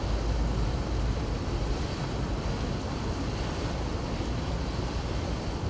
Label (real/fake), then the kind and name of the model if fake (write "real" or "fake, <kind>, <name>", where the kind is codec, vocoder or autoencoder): real